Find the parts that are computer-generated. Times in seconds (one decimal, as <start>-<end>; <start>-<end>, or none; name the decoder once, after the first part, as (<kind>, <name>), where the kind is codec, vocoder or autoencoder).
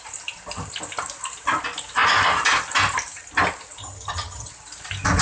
3.8-4.5 (vocoder, HiFi-GAN)